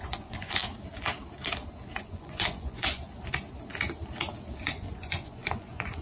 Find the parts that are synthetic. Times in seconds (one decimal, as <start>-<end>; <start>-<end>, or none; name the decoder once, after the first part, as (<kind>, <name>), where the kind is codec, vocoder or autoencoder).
0.0-0.6 (vocoder, Vocos); 1.9-3.0; 4.6-6.0